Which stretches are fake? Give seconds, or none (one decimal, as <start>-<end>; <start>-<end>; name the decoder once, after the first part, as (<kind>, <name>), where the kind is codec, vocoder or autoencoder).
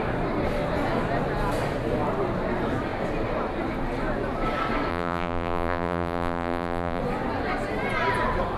4.9-7.0 (vocoder, BigVGAN v2)